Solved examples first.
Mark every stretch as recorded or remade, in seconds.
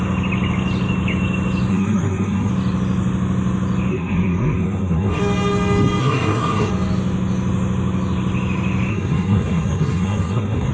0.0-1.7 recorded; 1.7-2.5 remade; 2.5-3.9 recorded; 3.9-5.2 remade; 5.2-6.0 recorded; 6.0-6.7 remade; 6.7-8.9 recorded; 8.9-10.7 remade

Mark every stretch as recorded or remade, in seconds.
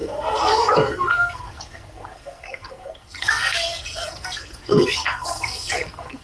0.0-6.2 remade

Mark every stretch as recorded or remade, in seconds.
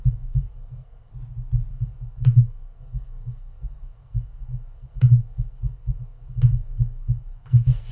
0.0-1.1 remade; 1.1-1.7 recorded; 1.7-7.9 remade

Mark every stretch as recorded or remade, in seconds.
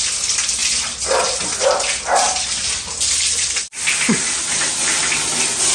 0.0-5.7 recorded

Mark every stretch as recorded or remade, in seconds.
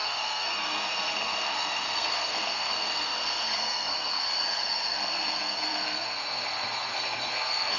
0.0-7.8 remade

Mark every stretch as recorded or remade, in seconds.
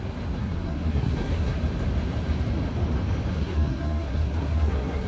0.0-0.4 recorded; 0.4-1.6 remade; 1.6-3.3 recorded; 3.3-5.1 remade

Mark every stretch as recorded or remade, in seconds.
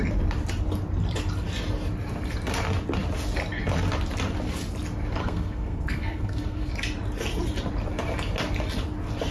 0.0-5.2 recorded; 5.2-6.7 remade; 6.7-9.3 recorded